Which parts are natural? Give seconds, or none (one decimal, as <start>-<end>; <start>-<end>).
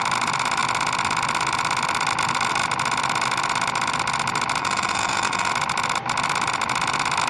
0.0-4.6; 5.5-7.3